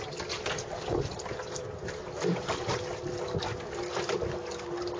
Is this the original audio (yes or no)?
yes